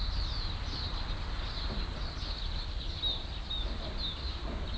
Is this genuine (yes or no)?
yes